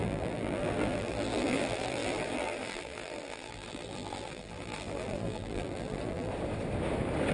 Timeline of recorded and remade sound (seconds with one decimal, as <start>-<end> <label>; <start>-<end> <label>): 0.0-6.3 remade; 6.3-7.3 recorded